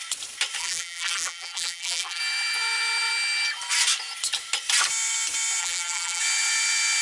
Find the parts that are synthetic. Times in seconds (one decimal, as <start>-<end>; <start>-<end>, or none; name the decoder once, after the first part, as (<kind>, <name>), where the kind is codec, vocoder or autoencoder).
0.6-2.2 (vocoder, BigVGAN v2); 5.6-6.2

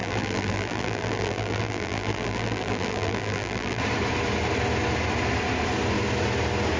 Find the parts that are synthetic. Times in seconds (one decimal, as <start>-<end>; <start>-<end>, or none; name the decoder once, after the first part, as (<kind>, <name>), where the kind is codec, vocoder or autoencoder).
0.0-3.8 (vocoder, BigVGAN v2)